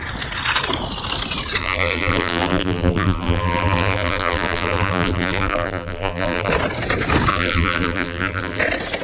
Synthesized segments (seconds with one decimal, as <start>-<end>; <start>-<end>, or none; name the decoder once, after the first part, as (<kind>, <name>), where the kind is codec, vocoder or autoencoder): 1.6-6.5 (vocoder, BigVGAN v2); 7.3-8.6